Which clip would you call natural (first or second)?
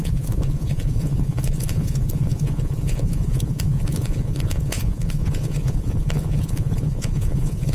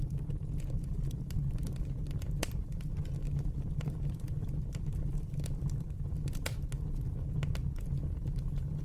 second